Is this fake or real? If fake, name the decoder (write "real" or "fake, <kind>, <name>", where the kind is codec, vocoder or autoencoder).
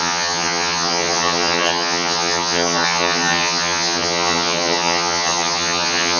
fake, vocoder, HiFi-GAN